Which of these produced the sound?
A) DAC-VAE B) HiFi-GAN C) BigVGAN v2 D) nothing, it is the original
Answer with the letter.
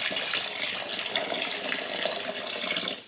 D